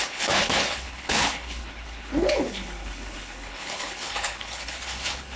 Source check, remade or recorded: remade